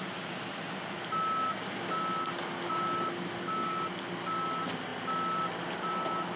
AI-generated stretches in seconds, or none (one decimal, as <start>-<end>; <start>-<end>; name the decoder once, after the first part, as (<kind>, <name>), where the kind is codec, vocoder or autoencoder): none

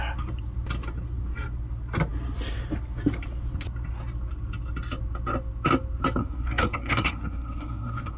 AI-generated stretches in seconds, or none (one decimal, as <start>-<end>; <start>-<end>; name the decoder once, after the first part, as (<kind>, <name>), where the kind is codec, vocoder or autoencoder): 6.2-8.2 (codec, SNAC)

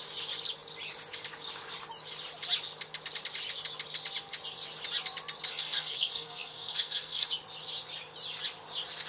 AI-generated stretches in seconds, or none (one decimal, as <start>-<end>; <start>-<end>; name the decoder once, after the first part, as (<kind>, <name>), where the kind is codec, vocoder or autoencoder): 5.5-7.3 (codec, SNAC)

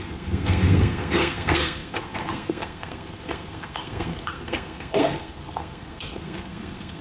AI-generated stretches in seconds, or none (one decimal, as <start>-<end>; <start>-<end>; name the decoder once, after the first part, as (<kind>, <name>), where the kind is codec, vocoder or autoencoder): 0.0-7.0 (codec, SNAC)

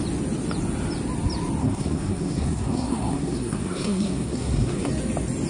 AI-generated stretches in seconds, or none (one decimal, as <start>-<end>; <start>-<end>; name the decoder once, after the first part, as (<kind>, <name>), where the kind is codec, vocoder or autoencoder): 1.6-4.9 (codec, SNAC)